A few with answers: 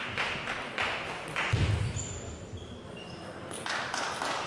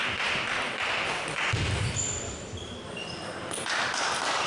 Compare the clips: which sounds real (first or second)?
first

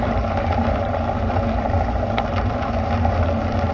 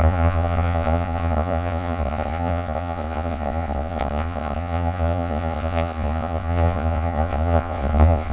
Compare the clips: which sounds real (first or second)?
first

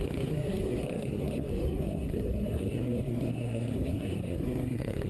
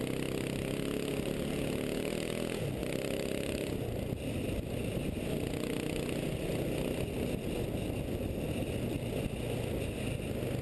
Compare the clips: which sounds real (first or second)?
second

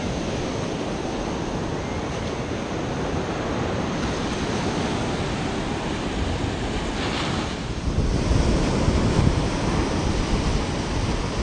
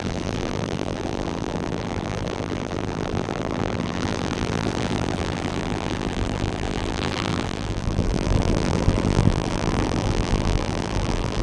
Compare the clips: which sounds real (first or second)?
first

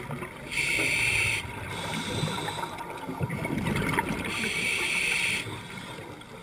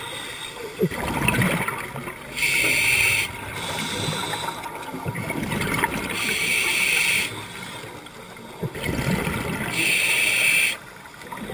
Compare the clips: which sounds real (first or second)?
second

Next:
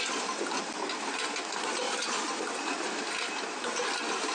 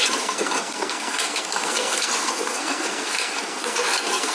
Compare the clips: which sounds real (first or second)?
first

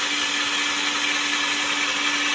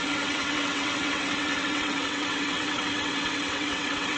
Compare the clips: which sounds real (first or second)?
first